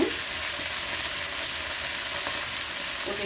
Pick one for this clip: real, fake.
real